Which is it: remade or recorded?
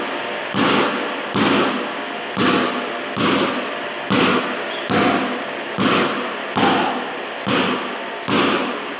recorded